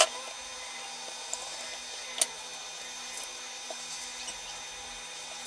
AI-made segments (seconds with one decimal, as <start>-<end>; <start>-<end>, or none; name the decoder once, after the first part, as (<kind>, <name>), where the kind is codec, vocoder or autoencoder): none